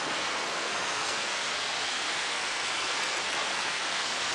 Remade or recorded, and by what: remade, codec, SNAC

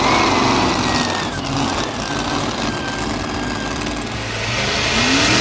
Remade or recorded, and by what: recorded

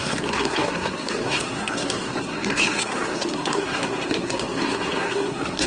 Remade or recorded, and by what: remade, codec, SNAC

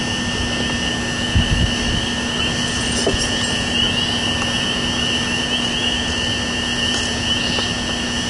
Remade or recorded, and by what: recorded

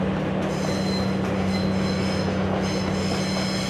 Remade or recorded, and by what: recorded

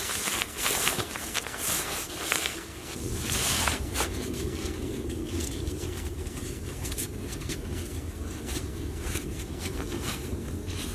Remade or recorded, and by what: remade, codec, SNAC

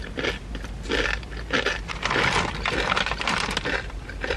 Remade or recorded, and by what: recorded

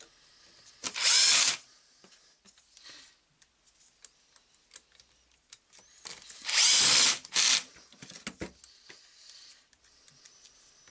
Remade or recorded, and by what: recorded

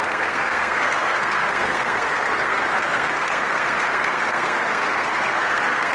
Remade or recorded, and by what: remade, codec, SNAC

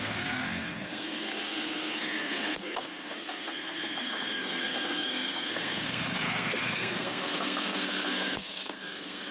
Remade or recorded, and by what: remade, codec, SNAC